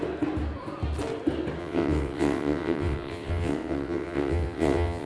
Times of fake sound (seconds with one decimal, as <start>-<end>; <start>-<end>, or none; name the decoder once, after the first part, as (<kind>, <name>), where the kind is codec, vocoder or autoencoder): 1.6-5.1 (vocoder, WaveNeXt)